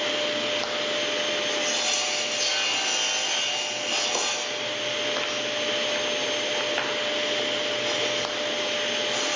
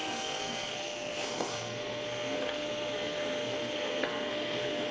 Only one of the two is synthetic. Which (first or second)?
second